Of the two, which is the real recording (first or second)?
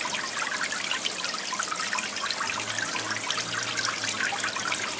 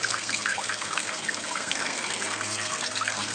first